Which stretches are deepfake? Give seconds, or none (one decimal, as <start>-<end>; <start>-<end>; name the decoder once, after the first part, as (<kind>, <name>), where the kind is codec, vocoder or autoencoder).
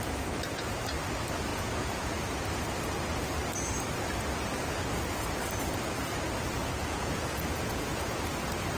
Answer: 1.5-2.4 (vocoder, Vocos); 6.6-8.2